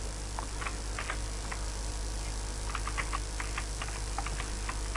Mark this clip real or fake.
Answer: real